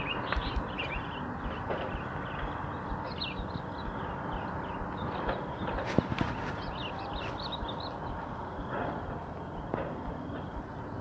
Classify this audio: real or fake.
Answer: real